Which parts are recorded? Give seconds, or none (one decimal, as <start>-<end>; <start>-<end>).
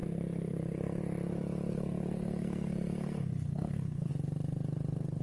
1.0-1.7; 4.1-5.2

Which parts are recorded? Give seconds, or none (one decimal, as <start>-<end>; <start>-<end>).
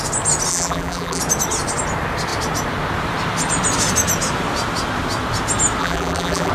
0.0-0.5; 1.2-5.8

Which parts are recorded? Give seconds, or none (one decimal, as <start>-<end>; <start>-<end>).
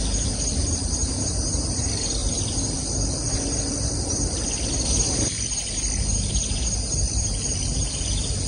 0.0-1.0; 1.8-8.5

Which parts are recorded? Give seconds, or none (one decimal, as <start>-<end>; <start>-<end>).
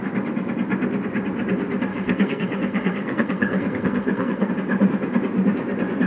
0.0-1.9; 4.5-6.1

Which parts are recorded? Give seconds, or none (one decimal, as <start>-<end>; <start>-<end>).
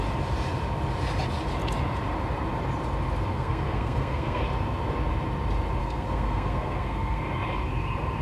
0.0-3.3; 4.4-5.8; 7.2-8.2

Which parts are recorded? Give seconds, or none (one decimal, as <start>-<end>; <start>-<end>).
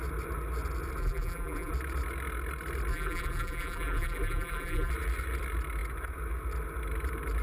0.0-1.0; 1.7-2.9; 4.9-7.4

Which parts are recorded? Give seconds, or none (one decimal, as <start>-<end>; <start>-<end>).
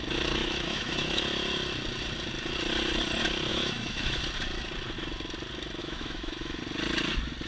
0.0-0.4; 1.2-3.5; 4.2-5.8; 6.6-7.5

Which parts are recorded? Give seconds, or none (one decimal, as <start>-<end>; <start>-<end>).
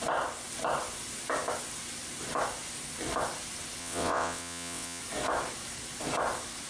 0.0-3.8; 5.0-6.7